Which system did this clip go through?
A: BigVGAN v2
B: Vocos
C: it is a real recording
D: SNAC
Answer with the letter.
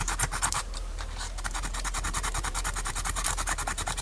A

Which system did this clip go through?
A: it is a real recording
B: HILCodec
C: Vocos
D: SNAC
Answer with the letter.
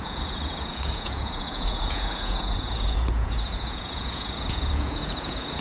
C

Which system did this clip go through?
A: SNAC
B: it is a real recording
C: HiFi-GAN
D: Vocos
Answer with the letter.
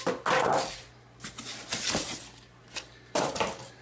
B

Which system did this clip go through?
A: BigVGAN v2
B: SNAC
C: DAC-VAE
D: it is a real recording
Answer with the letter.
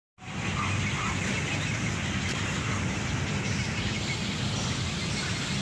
D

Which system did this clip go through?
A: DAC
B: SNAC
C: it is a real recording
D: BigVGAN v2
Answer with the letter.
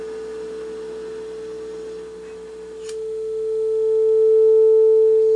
C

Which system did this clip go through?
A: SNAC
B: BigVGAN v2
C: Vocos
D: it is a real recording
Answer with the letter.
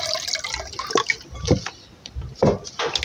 D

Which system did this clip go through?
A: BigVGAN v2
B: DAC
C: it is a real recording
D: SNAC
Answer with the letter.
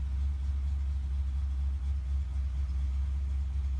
C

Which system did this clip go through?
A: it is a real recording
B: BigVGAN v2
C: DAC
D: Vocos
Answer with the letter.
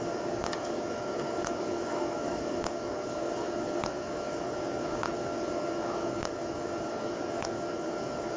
C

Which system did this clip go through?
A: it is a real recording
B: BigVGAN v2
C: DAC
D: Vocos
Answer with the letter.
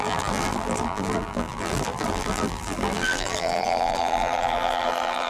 B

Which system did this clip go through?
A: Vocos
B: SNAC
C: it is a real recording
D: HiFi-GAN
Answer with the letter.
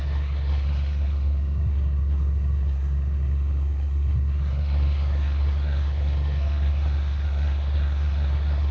B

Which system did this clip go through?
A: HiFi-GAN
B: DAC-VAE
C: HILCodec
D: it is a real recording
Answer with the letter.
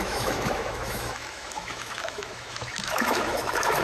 B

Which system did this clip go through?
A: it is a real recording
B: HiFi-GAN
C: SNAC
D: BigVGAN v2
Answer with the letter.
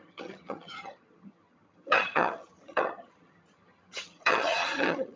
B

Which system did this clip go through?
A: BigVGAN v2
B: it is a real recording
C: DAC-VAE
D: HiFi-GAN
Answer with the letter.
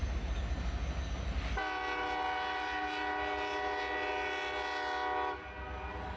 B